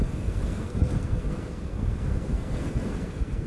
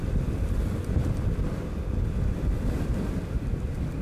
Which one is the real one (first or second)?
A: second